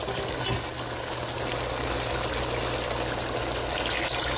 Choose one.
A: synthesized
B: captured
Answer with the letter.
B